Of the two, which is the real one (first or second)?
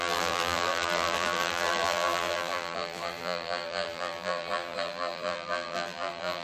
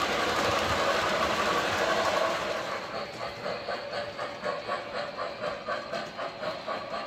second